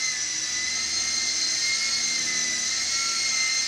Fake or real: real